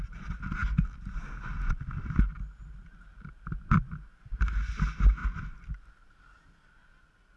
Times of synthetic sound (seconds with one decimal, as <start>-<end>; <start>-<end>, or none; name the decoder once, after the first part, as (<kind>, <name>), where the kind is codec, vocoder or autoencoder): none